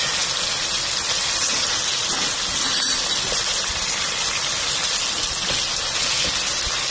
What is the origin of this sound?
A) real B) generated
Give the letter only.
A